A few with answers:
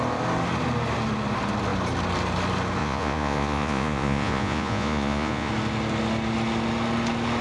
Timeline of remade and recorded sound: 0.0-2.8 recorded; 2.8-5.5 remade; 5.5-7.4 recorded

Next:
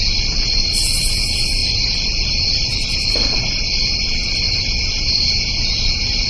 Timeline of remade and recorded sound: 0.0-6.3 recorded

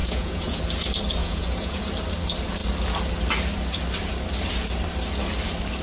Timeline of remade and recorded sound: 0.0-0.6 remade; 0.6-1.2 recorded; 1.2-1.8 remade; 1.8-5.8 recorded

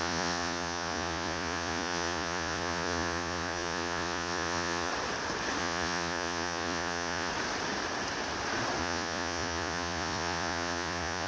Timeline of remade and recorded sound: 0.0-4.9 remade; 4.9-5.6 recorded; 5.6-7.3 remade; 7.3-8.8 recorded; 8.8-11.3 remade